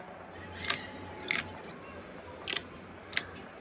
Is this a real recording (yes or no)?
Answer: yes